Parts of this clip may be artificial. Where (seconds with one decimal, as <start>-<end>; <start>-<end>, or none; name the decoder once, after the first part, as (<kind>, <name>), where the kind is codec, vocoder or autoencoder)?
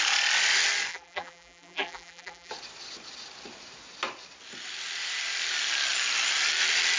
0.9-2.5 (vocoder, BigVGAN v2)